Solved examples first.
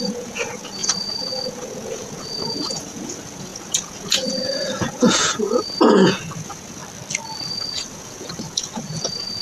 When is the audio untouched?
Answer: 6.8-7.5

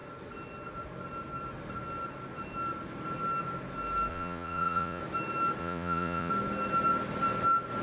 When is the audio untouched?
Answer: 0.0-4.1; 5.0-5.6; 6.3-7.8

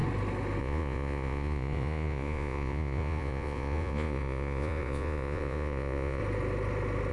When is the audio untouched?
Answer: 0.0-0.6; 6.2-7.1

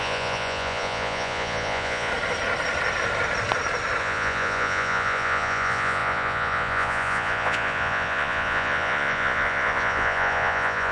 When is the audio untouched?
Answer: 2.1-4.0

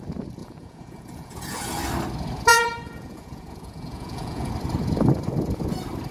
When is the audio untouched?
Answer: 0.0-0.4; 1.8-2.5; 4.5-6.1